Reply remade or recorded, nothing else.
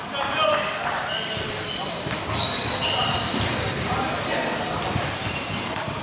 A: remade